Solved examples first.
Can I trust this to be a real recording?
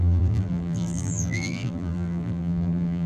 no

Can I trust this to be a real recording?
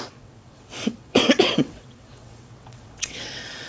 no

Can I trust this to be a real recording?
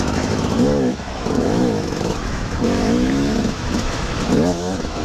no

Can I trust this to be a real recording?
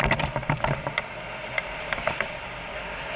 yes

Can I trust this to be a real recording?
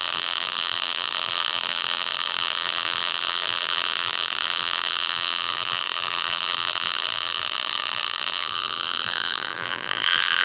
no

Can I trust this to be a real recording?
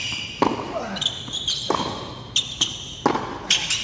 yes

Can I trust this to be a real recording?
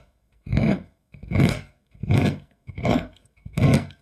no